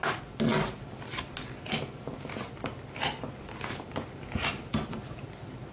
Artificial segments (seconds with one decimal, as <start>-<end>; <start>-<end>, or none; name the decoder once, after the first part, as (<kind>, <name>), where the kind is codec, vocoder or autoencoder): none